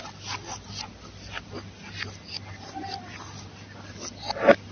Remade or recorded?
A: recorded